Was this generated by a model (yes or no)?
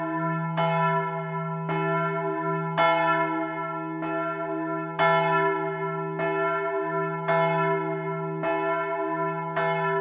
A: no